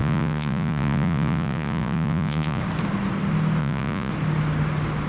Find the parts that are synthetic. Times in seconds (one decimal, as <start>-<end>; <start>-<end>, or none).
0.0-2.6; 3.6-4.1